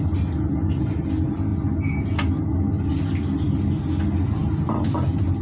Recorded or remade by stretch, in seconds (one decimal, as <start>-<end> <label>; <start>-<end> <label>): 0.0-5.4 recorded